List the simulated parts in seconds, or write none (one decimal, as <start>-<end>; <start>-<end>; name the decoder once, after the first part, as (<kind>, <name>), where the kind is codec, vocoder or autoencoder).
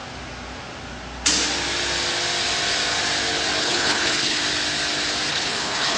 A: 3.6-4.4 (codec, HILCodec); 5.3-6.0